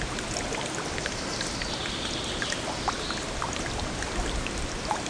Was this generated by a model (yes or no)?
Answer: no